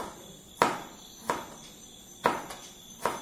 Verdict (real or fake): real